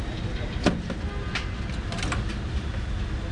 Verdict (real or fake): real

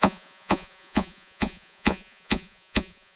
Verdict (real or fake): fake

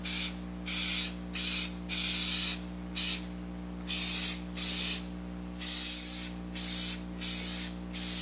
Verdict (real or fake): real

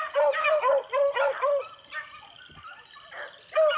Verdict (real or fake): real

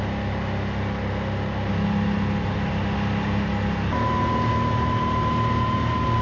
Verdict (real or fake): real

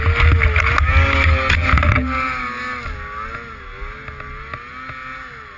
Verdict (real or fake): real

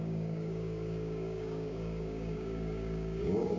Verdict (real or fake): fake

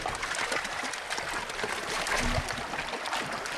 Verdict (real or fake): real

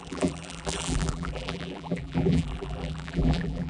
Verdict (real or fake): fake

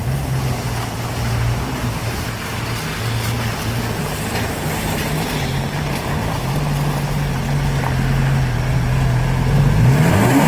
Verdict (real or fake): real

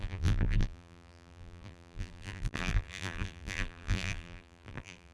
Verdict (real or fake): fake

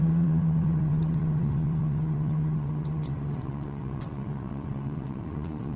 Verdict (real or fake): fake